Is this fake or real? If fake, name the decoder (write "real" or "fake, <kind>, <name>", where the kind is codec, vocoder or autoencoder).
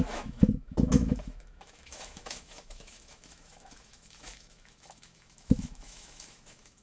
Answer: fake, autoencoder, DAC-VAE